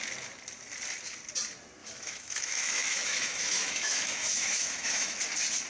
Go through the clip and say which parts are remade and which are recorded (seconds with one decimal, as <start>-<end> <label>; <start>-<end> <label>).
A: 0.0-1.8 recorded; 1.8-5.2 remade; 5.2-5.7 recorded